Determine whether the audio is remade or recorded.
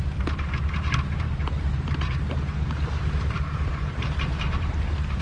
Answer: remade